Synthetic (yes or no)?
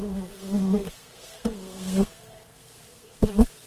yes